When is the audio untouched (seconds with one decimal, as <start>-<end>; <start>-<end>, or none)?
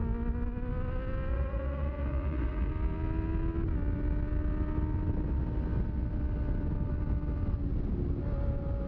0.0-1.3; 2.7-8.9